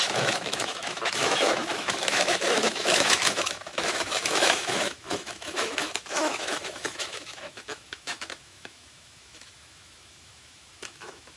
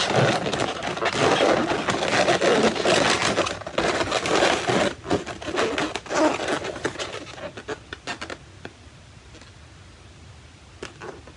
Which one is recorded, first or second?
second